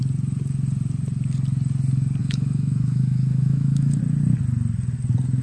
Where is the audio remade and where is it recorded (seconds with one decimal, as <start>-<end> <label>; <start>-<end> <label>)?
0.0-2.2 recorded; 2.2-4.0 remade; 4.0-5.4 recorded